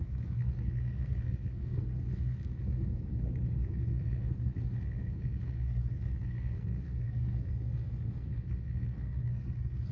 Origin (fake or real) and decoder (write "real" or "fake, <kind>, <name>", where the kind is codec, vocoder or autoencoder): fake, codec, SNAC